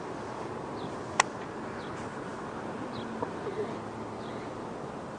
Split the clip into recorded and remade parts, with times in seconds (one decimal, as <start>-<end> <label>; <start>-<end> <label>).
0.0-5.2 recorded